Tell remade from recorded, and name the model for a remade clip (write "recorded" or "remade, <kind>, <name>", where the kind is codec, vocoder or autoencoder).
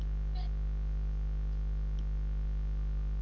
recorded